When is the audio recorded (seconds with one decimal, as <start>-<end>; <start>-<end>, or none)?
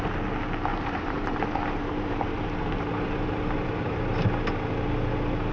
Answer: 0.0-0.7; 4.0-5.5